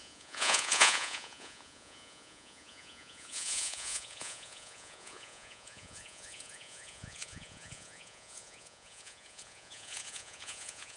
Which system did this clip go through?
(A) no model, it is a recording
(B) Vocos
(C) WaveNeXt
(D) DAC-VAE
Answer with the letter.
B